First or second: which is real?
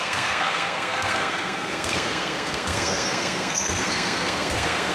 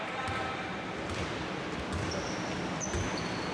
second